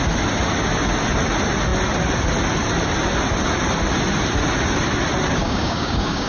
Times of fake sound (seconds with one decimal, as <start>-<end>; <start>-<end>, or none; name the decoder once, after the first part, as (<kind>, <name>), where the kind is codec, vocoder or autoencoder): 5.4-6.3 (codec, DAC)